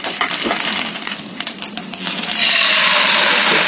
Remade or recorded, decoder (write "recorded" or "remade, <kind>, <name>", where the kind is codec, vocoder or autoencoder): recorded